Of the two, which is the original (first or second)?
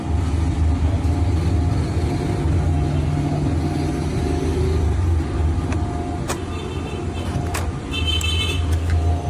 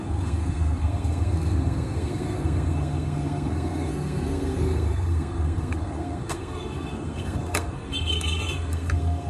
first